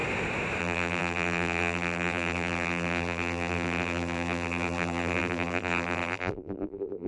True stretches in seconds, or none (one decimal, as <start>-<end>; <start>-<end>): 0.0-0.6